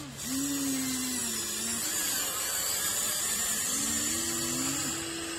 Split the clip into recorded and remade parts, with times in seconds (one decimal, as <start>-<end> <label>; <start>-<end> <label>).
0.0-5.4 recorded